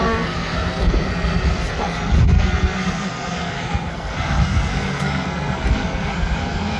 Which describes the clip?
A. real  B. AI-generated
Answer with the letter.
B